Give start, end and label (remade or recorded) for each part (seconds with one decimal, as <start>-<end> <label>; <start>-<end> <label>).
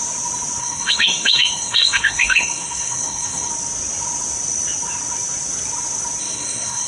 0.0-0.6 recorded; 0.6-3.5 remade; 3.5-6.2 recorded; 6.2-6.9 remade